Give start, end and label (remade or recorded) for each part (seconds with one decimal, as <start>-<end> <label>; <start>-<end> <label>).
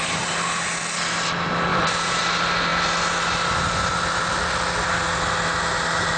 0.0-1.7 recorded; 1.7-2.2 remade; 2.2-6.2 recorded